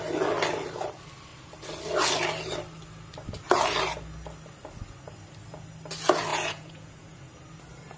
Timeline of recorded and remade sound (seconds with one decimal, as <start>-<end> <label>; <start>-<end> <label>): 0.0-6.3 recorded; 6.3-7.2 remade; 7.2-8.0 recorded